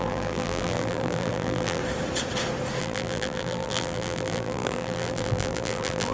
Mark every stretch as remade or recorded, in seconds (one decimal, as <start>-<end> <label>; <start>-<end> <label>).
0.0-1.8 remade; 1.8-2.8 recorded; 2.8-6.1 remade